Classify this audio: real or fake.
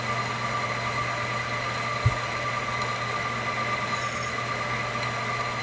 real